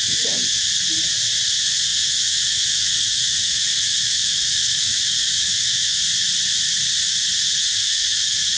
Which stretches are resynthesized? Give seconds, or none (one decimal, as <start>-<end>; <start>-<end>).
0.0-0.7; 1.5-6.0; 7.6-8.6